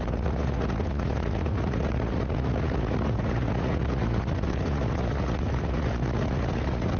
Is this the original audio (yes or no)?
no